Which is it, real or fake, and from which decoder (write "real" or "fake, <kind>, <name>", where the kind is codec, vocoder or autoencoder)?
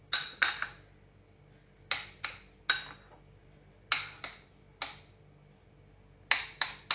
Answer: real